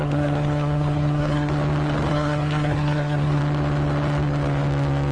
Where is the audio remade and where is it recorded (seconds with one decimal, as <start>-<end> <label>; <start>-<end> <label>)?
0.0-1.5 remade; 1.5-2.1 recorded; 2.1-3.4 remade; 3.4-5.1 recorded